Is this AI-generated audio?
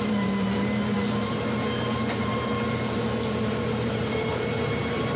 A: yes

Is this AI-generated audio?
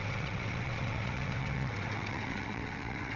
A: yes